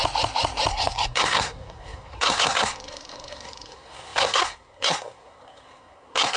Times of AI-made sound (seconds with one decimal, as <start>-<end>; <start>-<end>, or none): 0.7-6.4